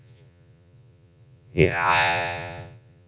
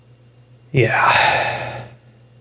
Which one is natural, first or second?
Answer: second